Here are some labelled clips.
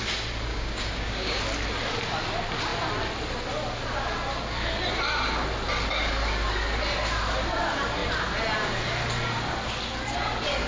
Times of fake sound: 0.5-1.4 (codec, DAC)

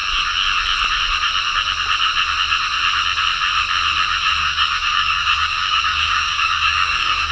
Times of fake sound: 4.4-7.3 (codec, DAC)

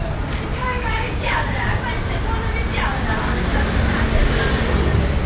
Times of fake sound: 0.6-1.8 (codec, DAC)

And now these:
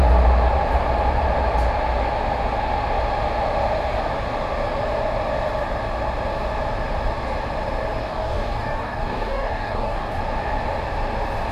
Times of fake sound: 8.0-10.2 (codec, DAC)

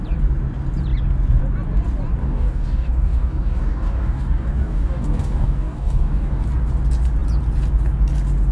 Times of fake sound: 2.2-6.4 (codec, DAC)

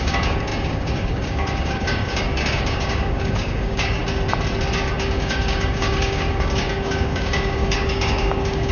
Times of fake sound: 0.0-4.0 (codec, DAC); 4.9-8.7